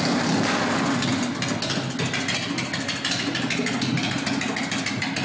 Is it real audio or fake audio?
real